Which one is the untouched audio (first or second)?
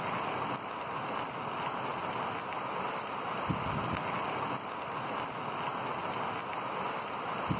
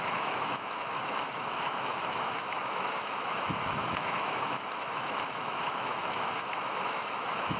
first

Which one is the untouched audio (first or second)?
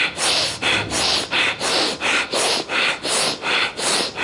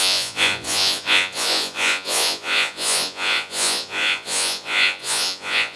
first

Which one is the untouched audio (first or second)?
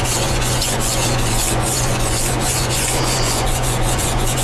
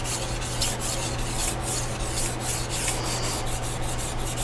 second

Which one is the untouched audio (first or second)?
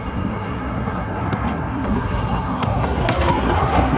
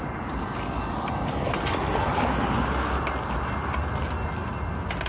second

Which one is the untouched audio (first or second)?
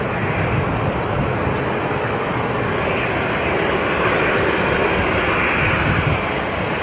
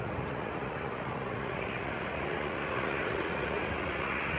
first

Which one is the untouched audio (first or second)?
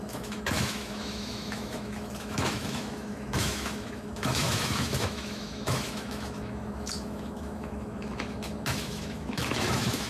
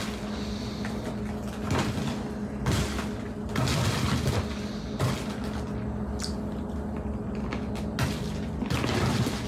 second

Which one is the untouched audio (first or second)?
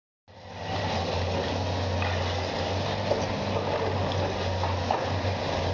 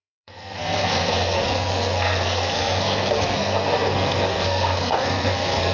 first